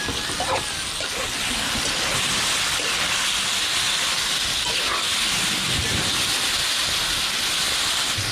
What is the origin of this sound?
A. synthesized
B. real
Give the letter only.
B